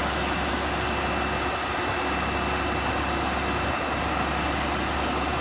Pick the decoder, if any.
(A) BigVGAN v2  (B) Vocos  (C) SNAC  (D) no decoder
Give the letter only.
D